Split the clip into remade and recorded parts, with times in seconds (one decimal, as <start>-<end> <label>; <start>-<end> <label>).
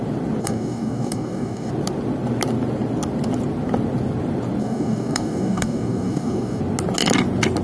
0.0-0.4 recorded; 0.4-1.7 remade; 1.7-4.6 recorded; 4.6-6.6 remade; 6.6-7.6 recorded